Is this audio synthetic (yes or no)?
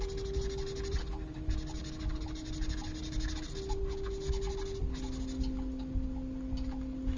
no